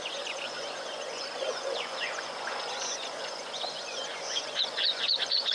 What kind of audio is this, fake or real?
fake